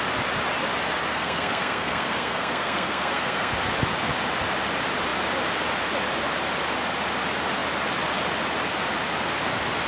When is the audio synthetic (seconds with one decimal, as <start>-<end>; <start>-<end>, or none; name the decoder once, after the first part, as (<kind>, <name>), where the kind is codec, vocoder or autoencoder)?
1.1-3.5 (codec, SNAC)